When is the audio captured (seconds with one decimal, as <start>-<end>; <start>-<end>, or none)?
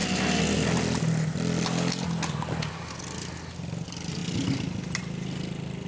0.0-5.9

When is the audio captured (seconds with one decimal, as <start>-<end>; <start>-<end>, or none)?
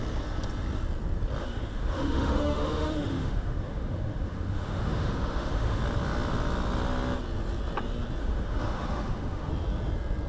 0.0-1.4; 5.8-8.2; 9.5-10.3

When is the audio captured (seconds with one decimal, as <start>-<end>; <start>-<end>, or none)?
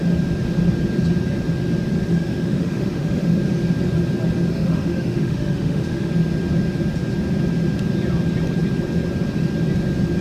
0.0-2.1; 3.4-4.5; 6.1-10.2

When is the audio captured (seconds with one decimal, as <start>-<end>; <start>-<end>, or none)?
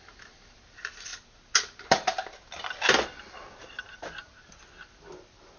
0.0-5.6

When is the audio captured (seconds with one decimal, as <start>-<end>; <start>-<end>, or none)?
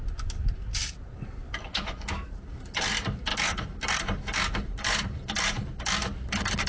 0.0-1.7; 2.3-6.7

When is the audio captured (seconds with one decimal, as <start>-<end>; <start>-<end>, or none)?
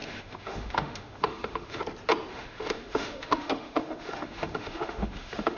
1.8-2.3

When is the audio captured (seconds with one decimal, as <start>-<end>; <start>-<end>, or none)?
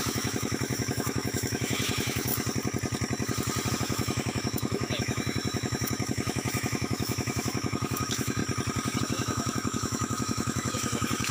2.3-3.7; 8.4-9.0